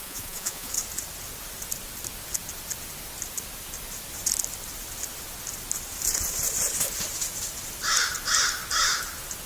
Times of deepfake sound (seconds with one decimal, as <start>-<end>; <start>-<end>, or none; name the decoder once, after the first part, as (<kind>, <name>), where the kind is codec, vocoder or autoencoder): 0.0-0.7 (vocoder, Vocos)